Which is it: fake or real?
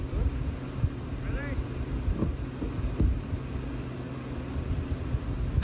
real